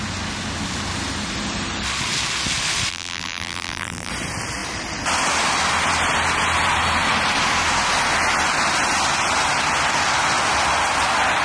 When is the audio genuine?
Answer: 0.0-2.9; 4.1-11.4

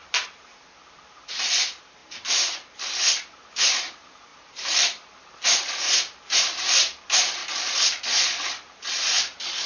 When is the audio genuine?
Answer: 7.4-9.7

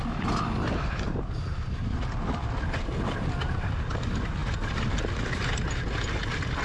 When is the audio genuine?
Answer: 0.0-6.6